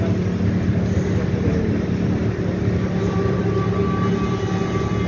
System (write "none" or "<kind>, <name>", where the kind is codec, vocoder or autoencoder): none